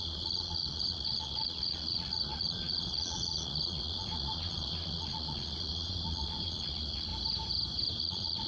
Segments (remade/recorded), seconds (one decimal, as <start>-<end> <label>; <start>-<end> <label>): 0.0-7.1 remade; 7.1-8.0 recorded; 8.0-8.5 remade